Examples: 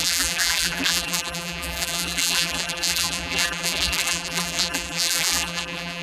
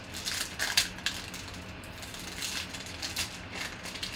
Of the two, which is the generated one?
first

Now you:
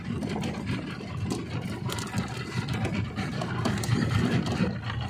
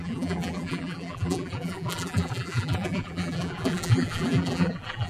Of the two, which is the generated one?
second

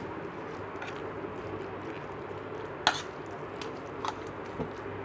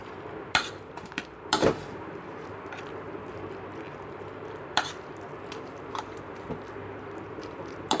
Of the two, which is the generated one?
second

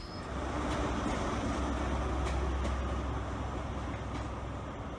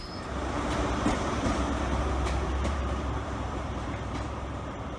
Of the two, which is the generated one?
second